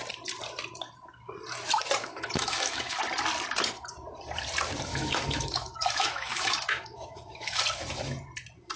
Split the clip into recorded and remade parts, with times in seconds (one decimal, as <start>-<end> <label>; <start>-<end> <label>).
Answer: 0.0-2.0 recorded; 2.0-3.0 remade; 3.0-4.9 recorded; 4.9-7.6 remade; 7.6-8.8 recorded